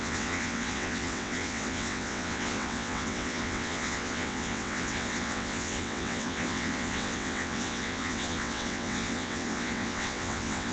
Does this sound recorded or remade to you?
remade